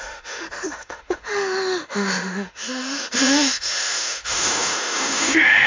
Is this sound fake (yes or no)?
yes